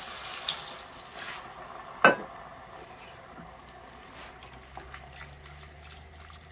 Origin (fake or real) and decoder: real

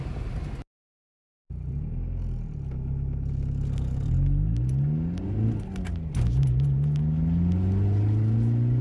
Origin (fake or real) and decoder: real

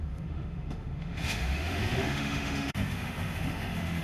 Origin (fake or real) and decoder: fake, autoencoder, DAC-VAE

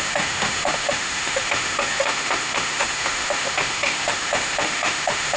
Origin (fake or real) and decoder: fake, autoencoder, DAC-VAE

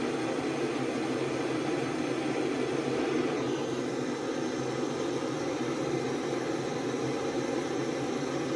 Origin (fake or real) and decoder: real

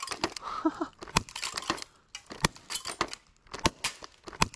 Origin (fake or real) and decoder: real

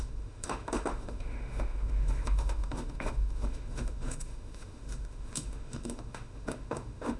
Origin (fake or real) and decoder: fake, autoencoder, DAC-VAE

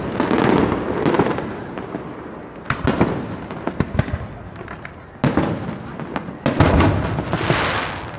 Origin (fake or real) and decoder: real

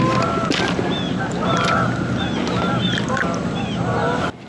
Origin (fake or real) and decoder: real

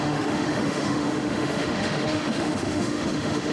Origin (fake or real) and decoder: fake, autoencoder, DAC-VAE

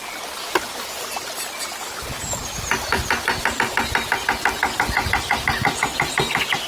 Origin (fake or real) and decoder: real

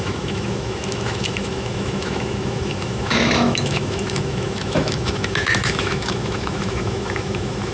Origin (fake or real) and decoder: fake, autoencoder, DAC-VAE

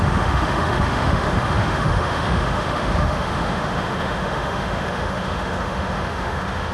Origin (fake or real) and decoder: fake, autoencoder, DAC-VAE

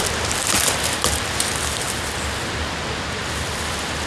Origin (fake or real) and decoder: real